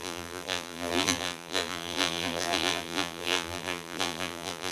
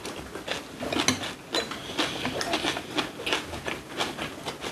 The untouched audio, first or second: second